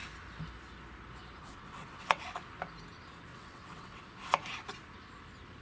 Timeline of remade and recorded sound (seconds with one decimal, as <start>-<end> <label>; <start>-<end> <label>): 0.0-1.4 recorded; 1.4-2.2 remade; 2.2-3.3 recorded; 3.3-4.0 remade; 4.0-5.6 recorded